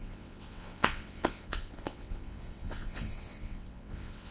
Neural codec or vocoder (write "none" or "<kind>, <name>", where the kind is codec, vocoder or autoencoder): vocoder, WaveNeXt